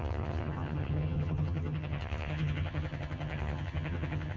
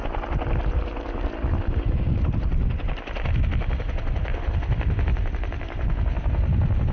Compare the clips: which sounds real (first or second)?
second